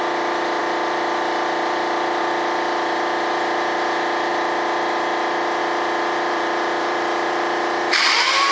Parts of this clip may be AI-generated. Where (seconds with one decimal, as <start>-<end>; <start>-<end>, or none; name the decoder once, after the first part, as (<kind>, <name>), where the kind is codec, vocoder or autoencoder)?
0.0-4.3 (vocoder, BigVGAN v2); 5.6-8.5

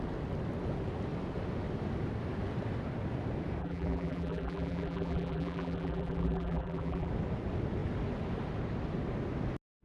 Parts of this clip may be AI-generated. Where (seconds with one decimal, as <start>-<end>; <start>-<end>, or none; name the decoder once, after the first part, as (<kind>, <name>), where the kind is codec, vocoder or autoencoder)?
3.6-7.1 (vocoder, BigVGAN v2)

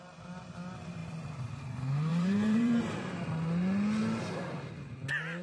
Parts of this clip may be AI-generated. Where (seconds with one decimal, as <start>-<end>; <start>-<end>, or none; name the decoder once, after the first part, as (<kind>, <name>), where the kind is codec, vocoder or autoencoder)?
2.1-2.8 (vocoder, BigVGAN v2)

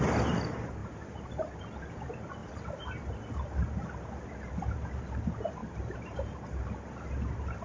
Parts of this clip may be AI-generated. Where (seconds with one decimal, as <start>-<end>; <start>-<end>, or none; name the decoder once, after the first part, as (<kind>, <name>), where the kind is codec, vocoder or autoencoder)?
0.8-1.6 (vocoder, BigVGAN v2); 5.6-6.6

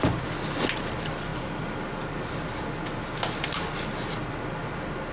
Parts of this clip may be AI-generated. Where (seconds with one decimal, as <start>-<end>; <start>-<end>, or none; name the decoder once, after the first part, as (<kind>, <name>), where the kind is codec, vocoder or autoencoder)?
none

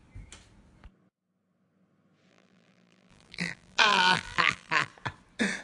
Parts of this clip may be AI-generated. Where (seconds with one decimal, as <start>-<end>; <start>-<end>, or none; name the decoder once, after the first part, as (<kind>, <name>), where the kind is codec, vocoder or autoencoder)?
2.3-4.9 (vocoder, BigVGAN v2)